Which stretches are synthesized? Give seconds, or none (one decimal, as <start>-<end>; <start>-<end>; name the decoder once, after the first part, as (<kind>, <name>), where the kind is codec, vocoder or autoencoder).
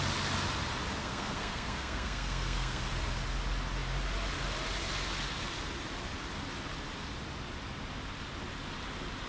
1.0-2.8 (codec, SNAC)